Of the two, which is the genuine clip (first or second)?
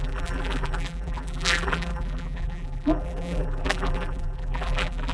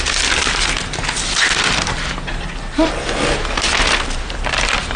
second